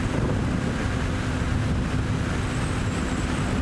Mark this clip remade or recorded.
recorded